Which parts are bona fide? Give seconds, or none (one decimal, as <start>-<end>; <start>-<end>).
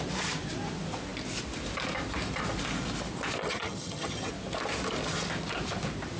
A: 0.0-3.4; 4.3-6.2